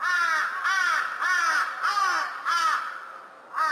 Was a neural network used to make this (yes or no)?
no